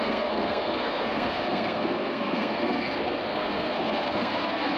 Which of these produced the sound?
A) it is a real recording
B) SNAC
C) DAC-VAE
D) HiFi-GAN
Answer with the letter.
B